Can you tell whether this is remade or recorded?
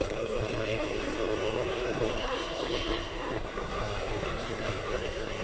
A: remade